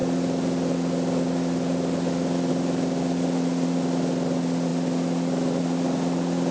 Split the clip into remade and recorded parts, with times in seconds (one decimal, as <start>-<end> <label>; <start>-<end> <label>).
0.0-6.5 recorded